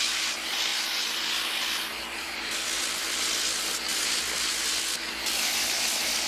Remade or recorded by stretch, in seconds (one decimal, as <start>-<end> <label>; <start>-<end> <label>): 0.0-0.7 remade; 0.7-2.0 recorded; 2.0-6.3 remade